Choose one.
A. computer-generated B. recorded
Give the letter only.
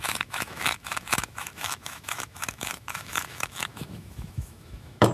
A